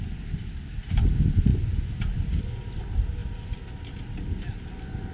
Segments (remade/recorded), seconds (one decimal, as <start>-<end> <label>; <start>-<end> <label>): 0.0-5.1 recorded